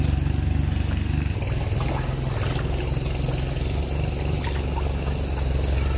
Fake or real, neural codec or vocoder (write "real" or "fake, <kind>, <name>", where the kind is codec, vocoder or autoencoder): real